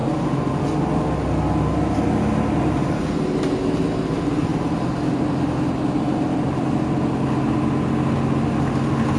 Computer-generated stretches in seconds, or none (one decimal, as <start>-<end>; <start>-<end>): none